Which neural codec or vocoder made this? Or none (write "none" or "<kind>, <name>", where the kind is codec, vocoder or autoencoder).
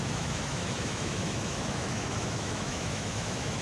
autoencoder, DAC-VAE